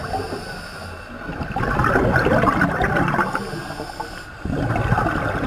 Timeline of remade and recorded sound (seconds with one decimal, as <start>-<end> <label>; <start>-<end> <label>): 0.0-5.5 recorded